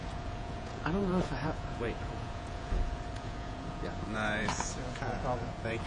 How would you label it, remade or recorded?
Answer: remade